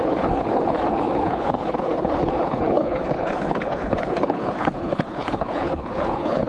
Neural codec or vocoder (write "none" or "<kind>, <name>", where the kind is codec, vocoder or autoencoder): codec, HILCodec